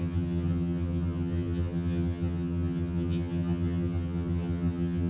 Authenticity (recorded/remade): remade